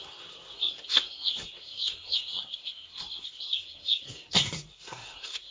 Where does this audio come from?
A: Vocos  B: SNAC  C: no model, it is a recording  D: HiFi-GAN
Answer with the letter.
B